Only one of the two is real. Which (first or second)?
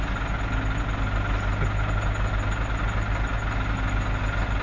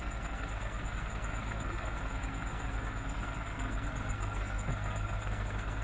first